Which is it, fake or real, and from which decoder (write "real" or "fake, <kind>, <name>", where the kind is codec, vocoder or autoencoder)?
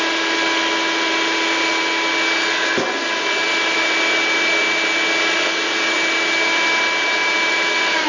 real